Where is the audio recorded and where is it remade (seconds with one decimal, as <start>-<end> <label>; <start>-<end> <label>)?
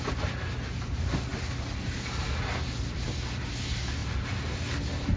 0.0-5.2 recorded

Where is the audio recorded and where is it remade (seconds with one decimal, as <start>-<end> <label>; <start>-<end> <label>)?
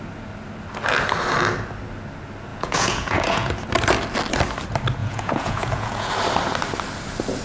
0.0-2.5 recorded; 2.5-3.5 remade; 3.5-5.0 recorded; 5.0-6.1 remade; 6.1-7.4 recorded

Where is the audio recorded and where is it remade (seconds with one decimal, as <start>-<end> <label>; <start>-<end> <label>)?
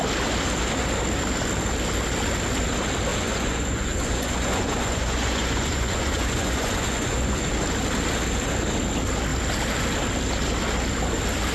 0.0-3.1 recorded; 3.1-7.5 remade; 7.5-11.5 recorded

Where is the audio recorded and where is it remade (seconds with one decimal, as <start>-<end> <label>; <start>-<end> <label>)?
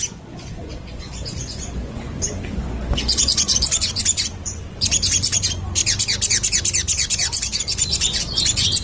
0.0-5.8 remade; 5.8-7.1 recorded; 7.1-8.8 remade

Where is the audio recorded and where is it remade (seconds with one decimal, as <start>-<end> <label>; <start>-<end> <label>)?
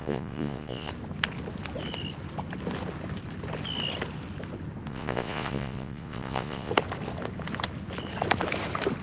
0.0-0.9 remade; 0.9-4.9 recorded; 4.9-6.7 remade; 6.7-9.0 recorded